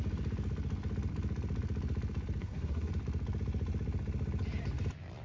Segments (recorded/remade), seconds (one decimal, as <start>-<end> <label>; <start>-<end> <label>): 0.0-2.4 recorded; 2.4-2.9 remade; 2.9-5.2 recorded